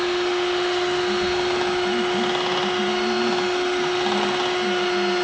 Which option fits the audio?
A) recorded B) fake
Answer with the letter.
A